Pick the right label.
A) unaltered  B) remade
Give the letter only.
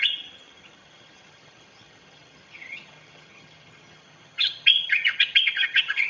B